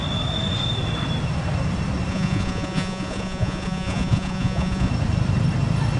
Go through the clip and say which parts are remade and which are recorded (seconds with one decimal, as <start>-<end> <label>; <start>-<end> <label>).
0.0-2.1 recorded; 2.1-4.9 remade; 4.9-6.0 recorded